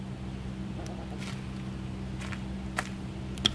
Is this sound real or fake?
real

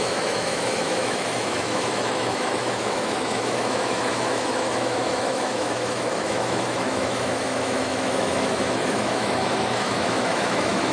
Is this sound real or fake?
fake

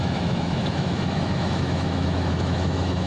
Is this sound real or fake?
fake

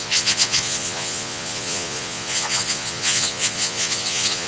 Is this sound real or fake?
fake